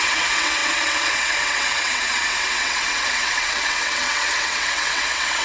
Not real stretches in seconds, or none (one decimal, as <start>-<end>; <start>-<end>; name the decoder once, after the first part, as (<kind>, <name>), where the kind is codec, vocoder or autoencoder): 0.0-5.4 (vocoder, WaveNeXt)